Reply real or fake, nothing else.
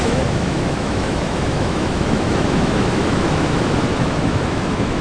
fake